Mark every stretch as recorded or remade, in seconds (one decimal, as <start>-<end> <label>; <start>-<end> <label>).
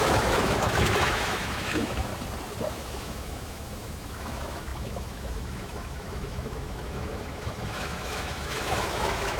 0.0-2.1 remade; 2.1-2.7 recorded; 2.7-9.4 remade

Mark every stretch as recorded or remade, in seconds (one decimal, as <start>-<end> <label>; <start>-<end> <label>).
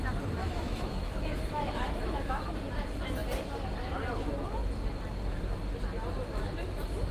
0.0-0.4 recorded; 0.4-2.5 remade; 2.5-7.1 recorded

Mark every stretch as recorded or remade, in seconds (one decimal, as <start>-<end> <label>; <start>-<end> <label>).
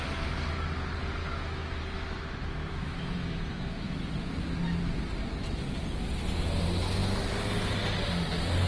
0.0-1.2 recorded; 1.2-1.8 remade; 1.8-2.6 recorded; 2.6-4.0 remade; 4.0-8.7 recorded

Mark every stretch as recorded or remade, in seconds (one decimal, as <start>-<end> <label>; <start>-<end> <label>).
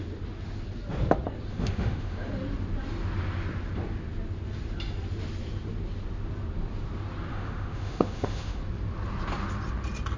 0.0-1.5 recorded; 1.5-2.3 remade; 2.3-7.3 recorded; 7.3-8.6 remade; 8.6-10.2 recorded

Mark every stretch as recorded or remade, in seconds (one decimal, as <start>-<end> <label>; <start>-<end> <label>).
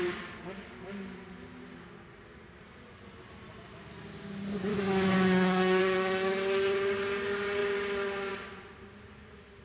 0.0-4.7 recorded; 4.7-5.8 remade; 5.8-9.6 recorded